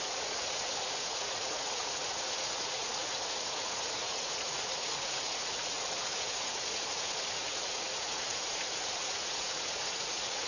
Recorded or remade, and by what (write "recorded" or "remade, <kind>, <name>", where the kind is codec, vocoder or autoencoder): remade, vocoder, Vocos